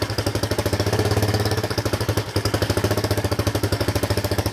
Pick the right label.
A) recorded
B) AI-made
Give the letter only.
B